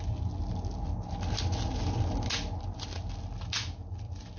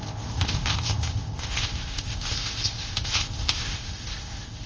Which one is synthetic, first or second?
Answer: second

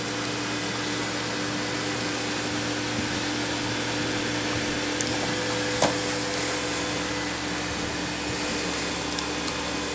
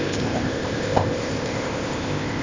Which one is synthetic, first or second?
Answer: second